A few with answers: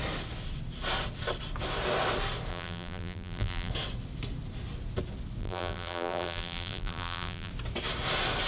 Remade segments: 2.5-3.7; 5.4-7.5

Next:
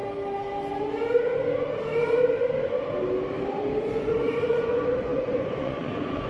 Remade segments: 3.8-6.3

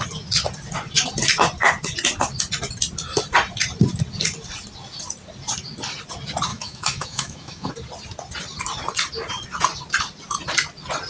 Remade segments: 6.5-7.7

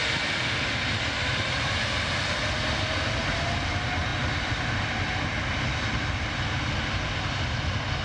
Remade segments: none